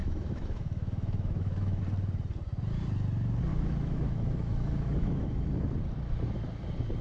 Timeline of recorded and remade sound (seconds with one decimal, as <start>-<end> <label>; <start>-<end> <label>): 0.0-1.8 remade; 1.8-3.5 recorded; 3.5-5.4 remade; 5.4-7.0 recorded